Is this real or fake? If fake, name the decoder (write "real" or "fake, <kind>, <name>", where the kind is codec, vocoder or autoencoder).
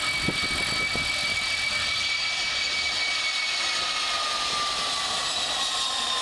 real